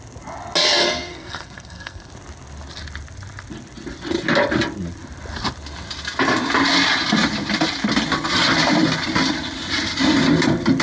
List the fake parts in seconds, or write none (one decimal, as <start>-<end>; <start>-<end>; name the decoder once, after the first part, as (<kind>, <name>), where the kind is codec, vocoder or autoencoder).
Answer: 0.8-2.1 (codec, SNAC)